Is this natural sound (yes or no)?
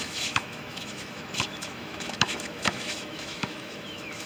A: no